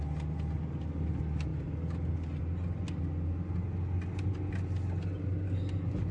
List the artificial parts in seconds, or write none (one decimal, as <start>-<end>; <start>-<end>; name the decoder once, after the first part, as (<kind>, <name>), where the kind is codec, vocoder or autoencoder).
none